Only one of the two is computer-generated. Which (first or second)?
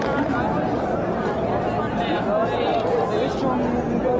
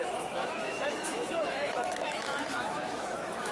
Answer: second